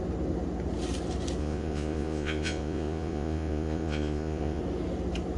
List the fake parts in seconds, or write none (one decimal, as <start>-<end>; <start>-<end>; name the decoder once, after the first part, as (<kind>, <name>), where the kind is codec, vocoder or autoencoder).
1.4-4.6 (vocoder, Vocos)